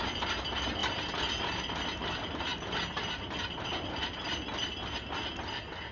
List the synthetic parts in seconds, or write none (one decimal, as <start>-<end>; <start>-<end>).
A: none